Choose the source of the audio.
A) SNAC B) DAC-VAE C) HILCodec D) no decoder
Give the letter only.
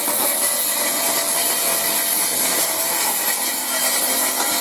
D